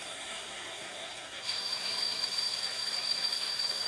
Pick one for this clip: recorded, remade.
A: remade